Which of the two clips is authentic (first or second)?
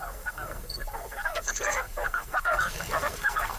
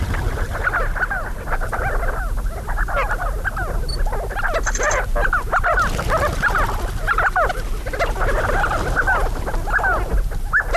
second